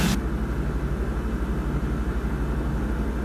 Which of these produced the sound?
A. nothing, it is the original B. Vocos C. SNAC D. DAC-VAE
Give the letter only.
A